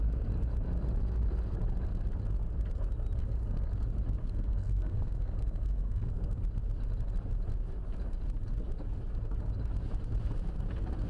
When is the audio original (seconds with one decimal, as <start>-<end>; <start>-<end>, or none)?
0.0-3.2; 3.7-4.2; 6.4-11.1